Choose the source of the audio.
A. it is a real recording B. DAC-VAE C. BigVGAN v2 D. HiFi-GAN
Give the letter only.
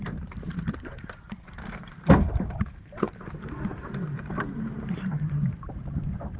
C